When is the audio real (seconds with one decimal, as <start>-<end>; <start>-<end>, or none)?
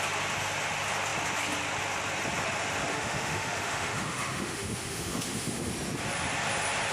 0.0-2.9; 5.7-6.9